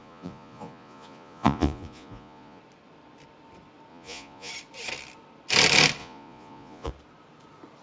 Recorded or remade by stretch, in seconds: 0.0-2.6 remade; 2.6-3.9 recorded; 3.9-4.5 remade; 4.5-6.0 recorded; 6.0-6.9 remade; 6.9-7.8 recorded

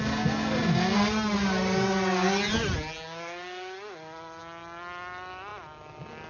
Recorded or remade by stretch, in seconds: 0.0-6.3 recorded

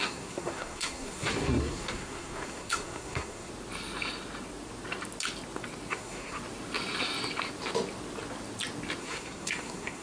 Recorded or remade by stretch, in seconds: 0.0-3.5 remade; 3.5-5.9 recorded; 5.9-6.4 remade; 6.4-9.0 recorded; 9.0-10.0 remade

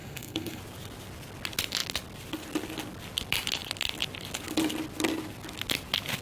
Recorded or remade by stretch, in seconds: 0.0-0.6 remade; 0.6-6.2 recorded